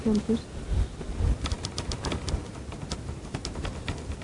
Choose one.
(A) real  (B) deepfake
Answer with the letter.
A